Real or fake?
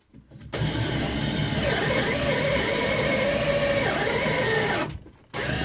real